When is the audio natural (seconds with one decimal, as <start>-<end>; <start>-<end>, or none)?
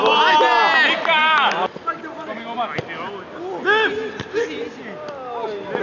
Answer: 0.0-5.8